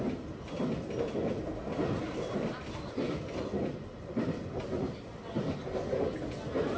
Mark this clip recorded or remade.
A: recorded